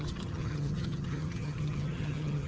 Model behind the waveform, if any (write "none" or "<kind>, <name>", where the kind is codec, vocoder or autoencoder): vocoder, HiFi-GAN